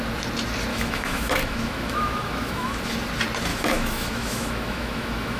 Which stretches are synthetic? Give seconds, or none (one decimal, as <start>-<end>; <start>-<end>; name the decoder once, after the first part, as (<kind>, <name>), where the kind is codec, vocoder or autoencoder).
0.7-2.8 (autoencoder, DAC-VAE); 3.5-5.4